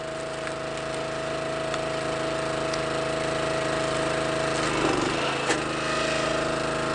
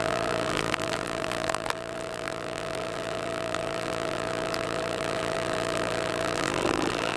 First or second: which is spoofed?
second